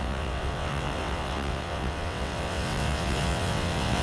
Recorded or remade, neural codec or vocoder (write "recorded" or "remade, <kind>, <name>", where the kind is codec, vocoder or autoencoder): remade, vocoder, WaveNeXt